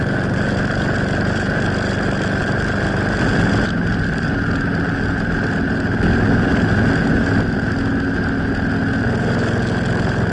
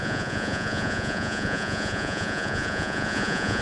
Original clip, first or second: first